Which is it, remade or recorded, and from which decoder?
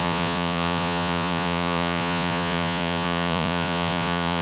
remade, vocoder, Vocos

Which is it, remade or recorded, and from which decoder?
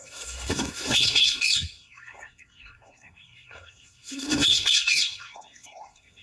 remade, codec, SNAC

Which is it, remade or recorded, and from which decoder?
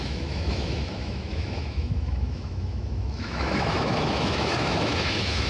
remade, autoencoder, DAC-VAE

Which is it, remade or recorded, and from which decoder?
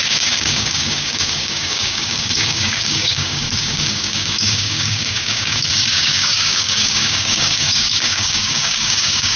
remade, codec, DAC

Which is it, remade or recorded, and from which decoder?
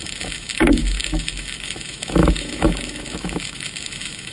remade, autoencoder, DAC-VAE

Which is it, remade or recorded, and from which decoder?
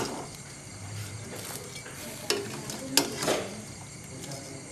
recorded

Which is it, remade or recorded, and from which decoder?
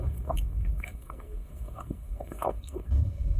remade, codec, SNAC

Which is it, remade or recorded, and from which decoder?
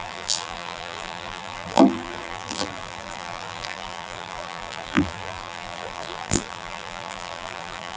remade, vocoder, BigVGAN v2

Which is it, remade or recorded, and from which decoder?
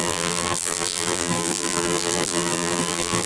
remade, vocoder, BigVGAN v2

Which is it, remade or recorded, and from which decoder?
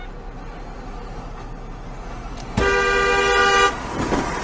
recorded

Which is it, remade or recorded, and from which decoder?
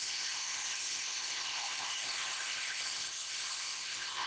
remade, codec, ZipCodec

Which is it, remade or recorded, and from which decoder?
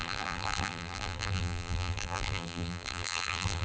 remade, vocoder, BigVGAN v2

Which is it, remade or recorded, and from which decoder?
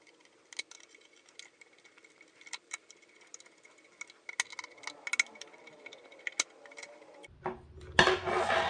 recorded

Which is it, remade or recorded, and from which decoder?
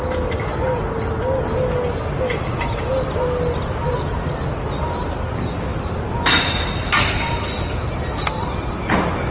recorded